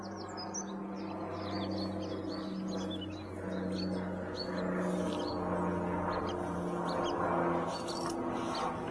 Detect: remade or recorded recorded